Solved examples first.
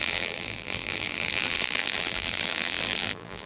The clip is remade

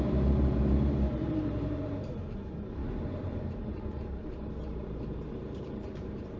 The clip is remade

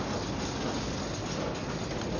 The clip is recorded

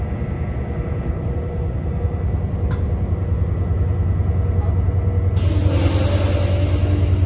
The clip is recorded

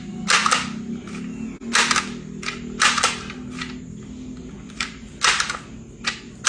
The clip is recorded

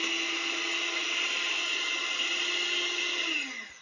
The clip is recorded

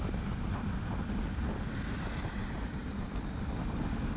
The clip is remade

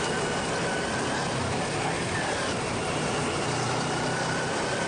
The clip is recorded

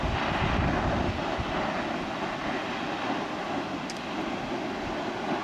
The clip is recorded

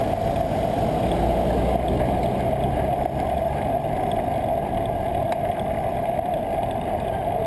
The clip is recorded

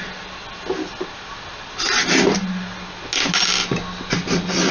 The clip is recorded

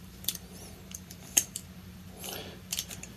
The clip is remade